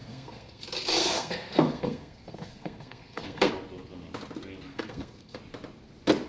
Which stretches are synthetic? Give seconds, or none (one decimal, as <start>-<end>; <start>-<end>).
0.0-0.6; 1.0-3.5; 4.7-5.4